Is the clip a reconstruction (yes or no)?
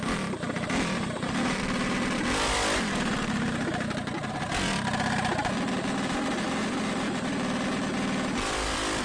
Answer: no